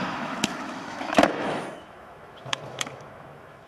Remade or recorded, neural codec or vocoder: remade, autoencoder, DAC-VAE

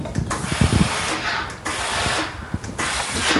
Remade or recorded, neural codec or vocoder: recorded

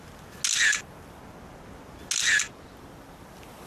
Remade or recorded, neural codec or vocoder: recorded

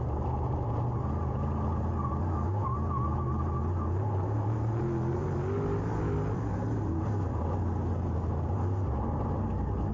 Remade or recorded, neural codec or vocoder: recorded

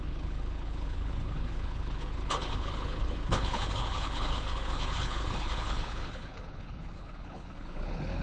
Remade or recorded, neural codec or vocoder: remade, codec, HILCodec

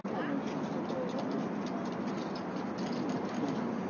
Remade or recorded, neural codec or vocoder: recorded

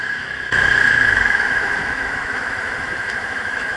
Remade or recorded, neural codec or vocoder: remade, autoencoder, DAC-VAE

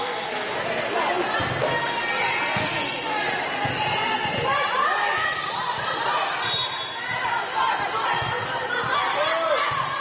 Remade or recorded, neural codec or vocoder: recorded